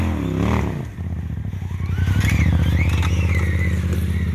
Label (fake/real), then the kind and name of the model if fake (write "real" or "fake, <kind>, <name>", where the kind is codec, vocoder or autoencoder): real